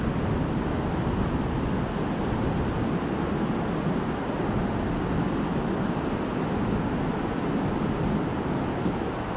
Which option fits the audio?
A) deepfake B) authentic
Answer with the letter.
B